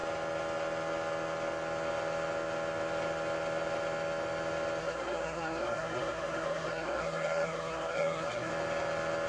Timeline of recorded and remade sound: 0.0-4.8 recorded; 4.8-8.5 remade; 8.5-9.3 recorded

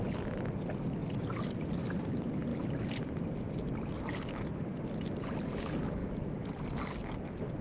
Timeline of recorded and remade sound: 0.0-7.6 recorded

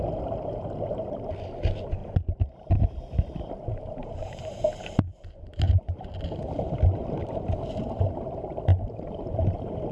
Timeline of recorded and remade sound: 0.0-4.0 recorded; 4.0-6.1 remade; 6.1-7.0 recorded; 7.0-8.0 remade; 8.0-8.7 recorded; 8.7-9.3 remade; 9.3-9.9 recorded

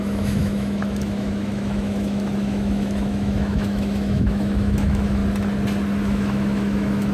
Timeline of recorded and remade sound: 0.0-5.2 remade; 5.2-6.0 recorded; 6.0-7.1 remade

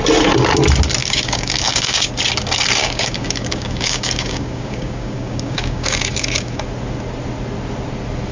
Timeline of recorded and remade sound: 0.0-1.0 recorded; 1.0-2.1 remade; 2.1-2.8 recorded; 2.8-6.6 remade; 6.6-8.3 recorded

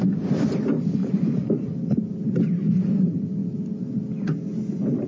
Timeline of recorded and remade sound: 0.0-1.0 recorded; 1.0-1.7 remade; 1.7-5.1 recorded

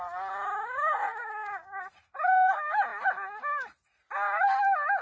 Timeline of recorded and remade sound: 0.0-1.1 recorded; 1.1-1.8 remade; 1.8-5.0 recorded